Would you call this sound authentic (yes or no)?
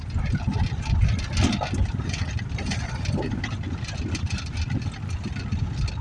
yes